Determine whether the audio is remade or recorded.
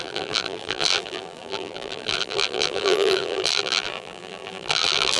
remade